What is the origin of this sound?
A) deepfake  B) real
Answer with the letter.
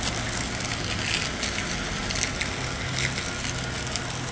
B